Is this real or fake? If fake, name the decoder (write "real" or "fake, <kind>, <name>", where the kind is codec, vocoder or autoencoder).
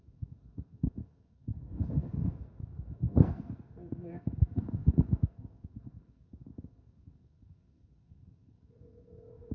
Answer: fake, codec, SNAC